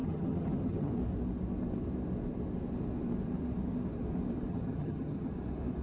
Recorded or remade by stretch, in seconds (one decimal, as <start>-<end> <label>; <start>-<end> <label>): 0.0-0.9 remade; 0.9-4.5 recorded; 4.5-5.3 remade; 5.3-5.8 recorded

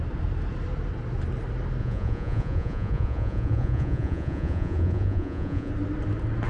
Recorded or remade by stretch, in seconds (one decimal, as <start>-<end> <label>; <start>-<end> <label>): 0.0-1.8 recorded; 1.8-5.7 remade; 5.7-6.5 recorded

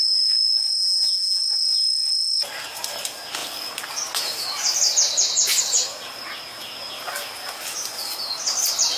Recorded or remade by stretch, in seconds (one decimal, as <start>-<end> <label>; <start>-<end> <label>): 0.0-0.8 recorded; 0.8-1.4 remade; 1.4-9.0 recorded

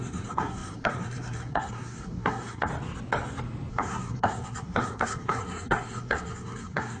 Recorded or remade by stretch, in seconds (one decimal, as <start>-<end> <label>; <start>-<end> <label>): 0.0-2.7 remade; 2.7-3.7 recorded; 3.7-7.0 remade